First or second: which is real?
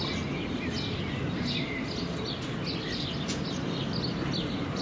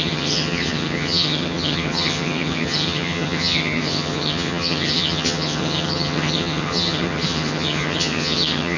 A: first